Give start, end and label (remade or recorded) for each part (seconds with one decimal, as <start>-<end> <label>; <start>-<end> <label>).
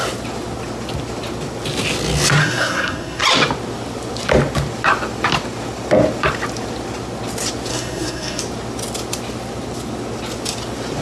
0.0-2.4 recorded; 2.4-3.2 remade; 3.2-7.7 recorded; 7.7-8.4 remade; 8.4-11.0 recorded